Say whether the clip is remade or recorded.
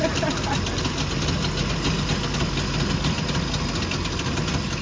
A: recorded